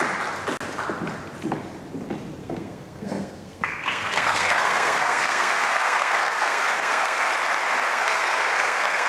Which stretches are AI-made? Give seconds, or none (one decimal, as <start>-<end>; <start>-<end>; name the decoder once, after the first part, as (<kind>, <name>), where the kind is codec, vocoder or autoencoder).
2.4-7.3 (codec, SNAC); 7.9-9.1